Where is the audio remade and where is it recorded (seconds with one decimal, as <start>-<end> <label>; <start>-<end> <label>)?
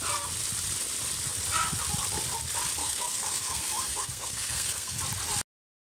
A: 0.0-2.8 recorded; 2.8-5.0 remade; 5.0-5.8 recorded